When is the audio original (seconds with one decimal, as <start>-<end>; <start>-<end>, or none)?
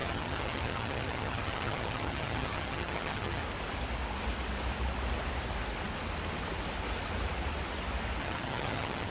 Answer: 3.4-8.2